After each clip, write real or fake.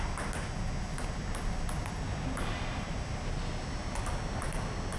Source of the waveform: real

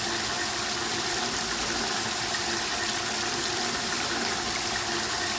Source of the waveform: real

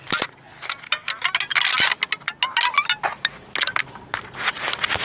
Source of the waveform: real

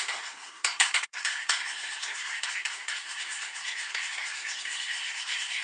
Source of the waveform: fake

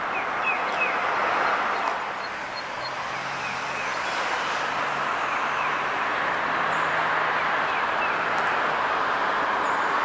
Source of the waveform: real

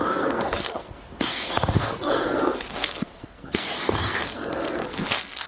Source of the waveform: fake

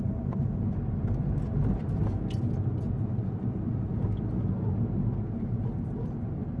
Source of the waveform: real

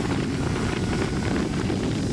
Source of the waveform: real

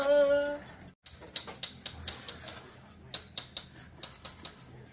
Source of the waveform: real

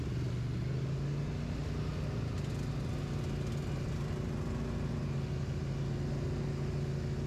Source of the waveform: real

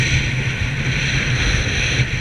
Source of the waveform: real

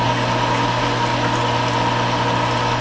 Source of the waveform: real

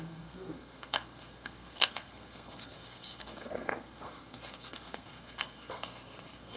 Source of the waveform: fake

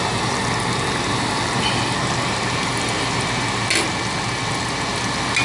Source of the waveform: real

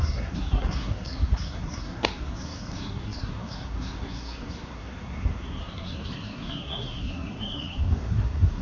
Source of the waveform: fake